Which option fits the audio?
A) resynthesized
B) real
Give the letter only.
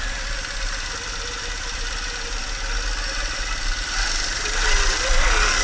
B